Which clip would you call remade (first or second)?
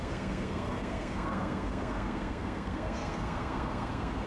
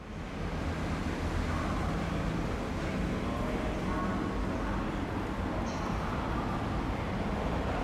first